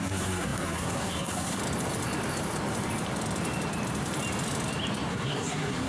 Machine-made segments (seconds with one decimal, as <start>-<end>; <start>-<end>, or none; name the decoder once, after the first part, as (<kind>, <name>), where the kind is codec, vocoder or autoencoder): 0.0-1.6 (codec, SNAC); 5.1-5.9